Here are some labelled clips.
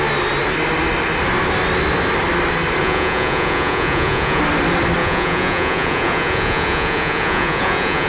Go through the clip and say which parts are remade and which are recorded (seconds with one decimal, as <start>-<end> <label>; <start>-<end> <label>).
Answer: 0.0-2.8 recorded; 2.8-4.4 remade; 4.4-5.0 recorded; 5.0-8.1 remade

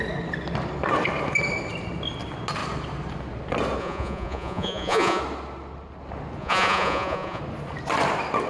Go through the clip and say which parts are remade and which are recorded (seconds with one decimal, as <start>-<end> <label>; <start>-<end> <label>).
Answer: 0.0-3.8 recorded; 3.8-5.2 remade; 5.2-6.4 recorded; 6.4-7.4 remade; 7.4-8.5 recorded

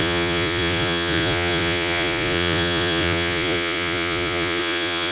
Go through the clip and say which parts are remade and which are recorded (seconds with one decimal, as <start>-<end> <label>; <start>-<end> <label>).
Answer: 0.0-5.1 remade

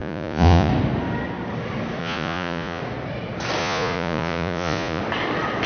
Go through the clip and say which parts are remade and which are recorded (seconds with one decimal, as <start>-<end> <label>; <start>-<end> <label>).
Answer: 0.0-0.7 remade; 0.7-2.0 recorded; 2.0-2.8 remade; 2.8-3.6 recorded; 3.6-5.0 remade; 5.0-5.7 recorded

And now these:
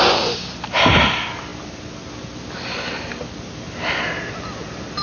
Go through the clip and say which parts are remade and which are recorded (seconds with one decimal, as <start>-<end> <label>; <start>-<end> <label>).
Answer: 0.0-5.0 recorded

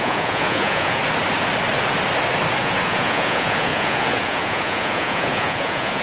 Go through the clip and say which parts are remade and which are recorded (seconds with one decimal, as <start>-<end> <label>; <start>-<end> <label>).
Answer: 0.0-1.0 remade; 1.0-2.6 recorded; 2.6-6.0 remade